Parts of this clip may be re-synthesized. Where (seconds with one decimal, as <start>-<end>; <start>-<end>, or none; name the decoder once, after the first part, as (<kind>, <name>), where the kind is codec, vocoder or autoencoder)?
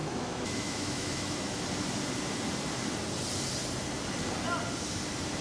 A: 0.0-1.6 (autoencoder, DAC-VAE)